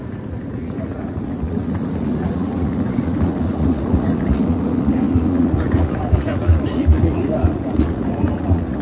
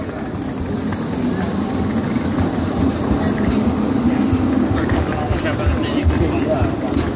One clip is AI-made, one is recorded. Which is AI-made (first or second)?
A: first